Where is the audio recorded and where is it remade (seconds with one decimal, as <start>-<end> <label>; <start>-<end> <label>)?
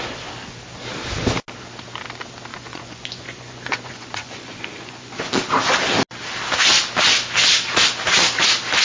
0.0-2.5 recorded; 2.5-5.3 remade; 5.3-8.8 recorded